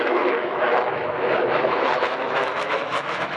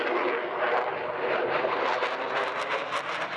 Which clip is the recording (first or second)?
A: second